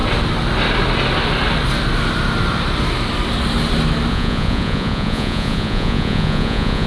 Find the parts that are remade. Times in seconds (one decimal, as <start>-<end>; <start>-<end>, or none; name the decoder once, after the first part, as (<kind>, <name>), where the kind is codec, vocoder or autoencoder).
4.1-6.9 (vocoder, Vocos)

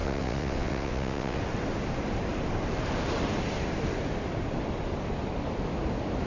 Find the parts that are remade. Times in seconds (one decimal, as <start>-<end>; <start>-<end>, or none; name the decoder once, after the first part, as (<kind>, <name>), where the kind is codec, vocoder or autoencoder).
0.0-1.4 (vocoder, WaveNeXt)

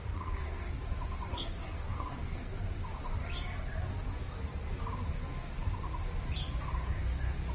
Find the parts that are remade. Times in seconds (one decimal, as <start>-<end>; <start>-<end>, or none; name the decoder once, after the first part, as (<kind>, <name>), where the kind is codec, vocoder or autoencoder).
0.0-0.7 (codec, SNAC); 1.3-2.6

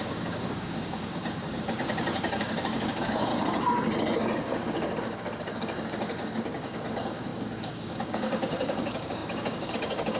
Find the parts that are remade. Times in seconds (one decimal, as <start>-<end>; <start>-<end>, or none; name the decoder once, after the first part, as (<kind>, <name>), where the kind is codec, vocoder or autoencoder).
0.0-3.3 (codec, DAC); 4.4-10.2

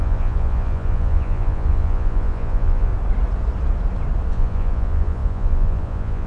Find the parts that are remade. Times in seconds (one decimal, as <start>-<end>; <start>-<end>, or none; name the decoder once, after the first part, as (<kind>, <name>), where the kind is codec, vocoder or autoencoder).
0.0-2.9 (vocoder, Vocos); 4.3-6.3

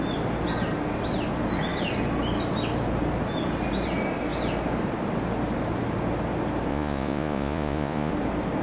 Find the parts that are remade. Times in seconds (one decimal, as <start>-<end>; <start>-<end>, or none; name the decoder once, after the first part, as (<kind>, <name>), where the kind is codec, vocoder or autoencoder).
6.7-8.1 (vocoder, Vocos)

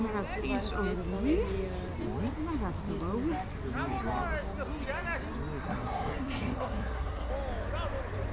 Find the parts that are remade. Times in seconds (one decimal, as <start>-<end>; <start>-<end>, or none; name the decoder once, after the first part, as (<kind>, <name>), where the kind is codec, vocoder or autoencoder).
5.6-7.3 (codec, SNAC)